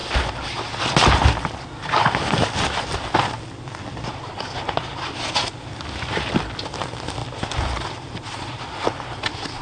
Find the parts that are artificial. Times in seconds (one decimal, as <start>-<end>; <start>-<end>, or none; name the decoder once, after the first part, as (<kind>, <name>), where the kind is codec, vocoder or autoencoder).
none